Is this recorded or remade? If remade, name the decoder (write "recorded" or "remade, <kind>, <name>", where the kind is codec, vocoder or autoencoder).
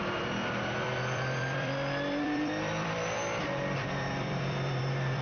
remade, vocoder, BigVGAN v2